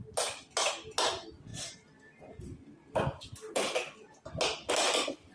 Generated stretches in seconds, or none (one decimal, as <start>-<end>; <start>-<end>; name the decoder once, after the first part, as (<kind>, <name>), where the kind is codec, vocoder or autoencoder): none

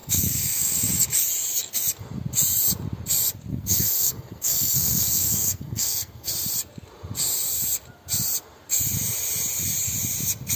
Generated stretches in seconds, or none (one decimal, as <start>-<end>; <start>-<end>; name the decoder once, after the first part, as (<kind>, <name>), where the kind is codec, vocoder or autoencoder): 0.0-0.9 (codec, SNAC); 3.5-6.3